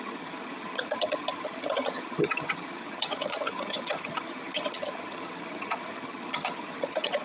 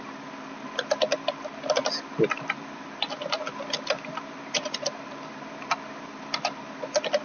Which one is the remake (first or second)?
first